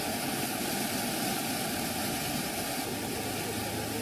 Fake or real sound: real